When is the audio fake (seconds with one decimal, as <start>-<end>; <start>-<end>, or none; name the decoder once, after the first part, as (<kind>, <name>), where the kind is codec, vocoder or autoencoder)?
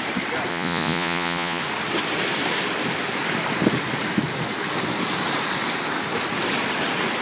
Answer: 0.5-1.6 (vocoder, Vocos)